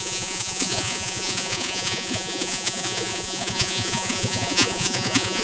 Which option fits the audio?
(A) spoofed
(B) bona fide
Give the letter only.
A